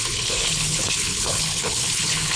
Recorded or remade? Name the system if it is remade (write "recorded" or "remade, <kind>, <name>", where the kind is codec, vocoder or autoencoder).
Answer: remade, codec, HILCodec